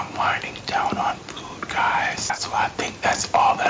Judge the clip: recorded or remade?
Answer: remade